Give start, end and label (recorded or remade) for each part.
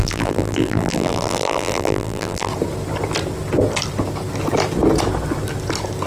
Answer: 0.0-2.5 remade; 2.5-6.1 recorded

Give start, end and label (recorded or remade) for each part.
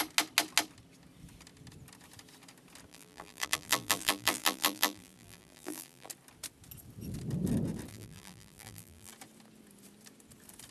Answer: 0.0-2.9 recorded; 2.9-6.1 remade; 6.1-7.9 recorded; 7.9-9.1 remade; 9.1-10.7 recorded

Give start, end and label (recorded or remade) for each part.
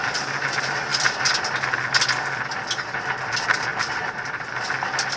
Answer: 0.0-3.7 recorded; 3.7-4.6 remade; 4.6-5.2 recorded